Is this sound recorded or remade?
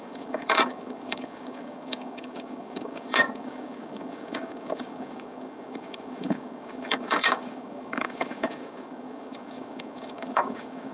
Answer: remade